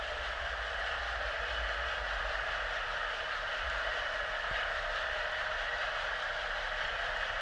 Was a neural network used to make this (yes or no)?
no